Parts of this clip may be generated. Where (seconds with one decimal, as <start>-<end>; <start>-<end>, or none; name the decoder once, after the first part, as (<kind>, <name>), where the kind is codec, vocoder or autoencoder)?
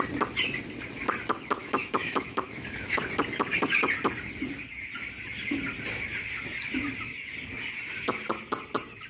1.6-3.0 (autoencoder, DAC-VAE)